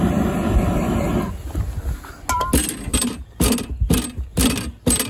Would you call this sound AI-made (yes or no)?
no